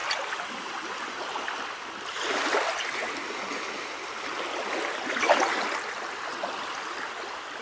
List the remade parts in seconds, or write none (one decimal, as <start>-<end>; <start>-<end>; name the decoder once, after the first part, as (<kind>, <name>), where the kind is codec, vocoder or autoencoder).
none